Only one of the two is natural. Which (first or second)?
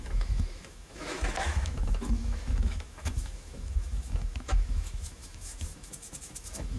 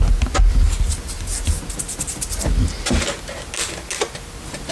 second